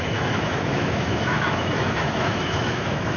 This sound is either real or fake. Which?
fake